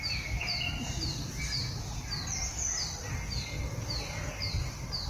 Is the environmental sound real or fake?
real